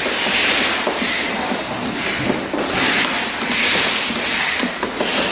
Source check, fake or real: real